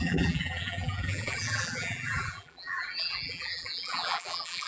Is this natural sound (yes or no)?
no